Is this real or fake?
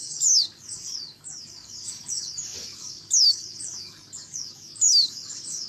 fake